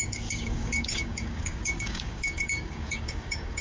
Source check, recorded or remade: remade